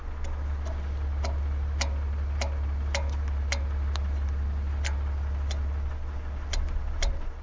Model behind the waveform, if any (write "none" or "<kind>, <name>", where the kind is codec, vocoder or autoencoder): none